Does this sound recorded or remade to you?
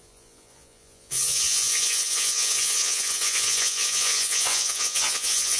remade